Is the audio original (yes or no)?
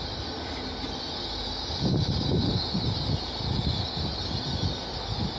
yes